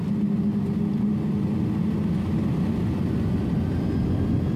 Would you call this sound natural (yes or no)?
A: yes